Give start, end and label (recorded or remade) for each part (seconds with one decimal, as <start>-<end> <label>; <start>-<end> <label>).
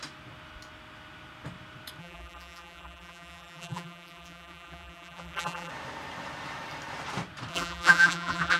0.0-2.0 recorded; 2.0-5.7 remade; 5.7-7.5 recorded; 7.5-8.6 remade